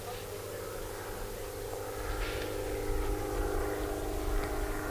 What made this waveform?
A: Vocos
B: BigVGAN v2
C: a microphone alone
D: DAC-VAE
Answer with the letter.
C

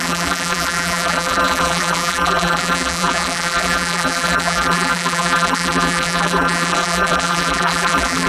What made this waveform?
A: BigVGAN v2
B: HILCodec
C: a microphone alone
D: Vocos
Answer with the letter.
A